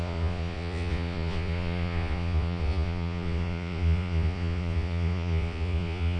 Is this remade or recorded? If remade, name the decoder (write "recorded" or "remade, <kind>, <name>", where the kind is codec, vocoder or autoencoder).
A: remade, vocoder, Vocos